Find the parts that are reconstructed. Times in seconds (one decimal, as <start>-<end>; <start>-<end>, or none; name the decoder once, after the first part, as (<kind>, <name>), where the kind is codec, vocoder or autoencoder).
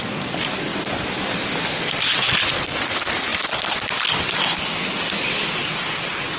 none